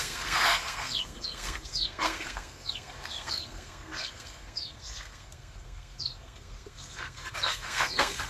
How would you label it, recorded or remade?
remade